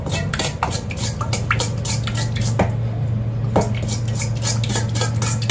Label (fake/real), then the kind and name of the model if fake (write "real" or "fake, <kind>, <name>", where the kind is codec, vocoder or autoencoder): real